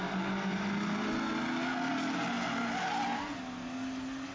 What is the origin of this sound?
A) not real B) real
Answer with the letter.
B